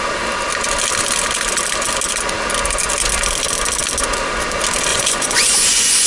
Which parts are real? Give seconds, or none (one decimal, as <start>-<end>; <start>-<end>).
0.0-4.9